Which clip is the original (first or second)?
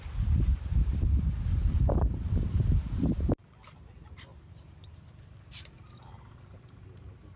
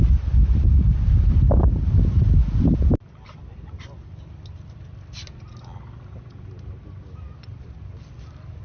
second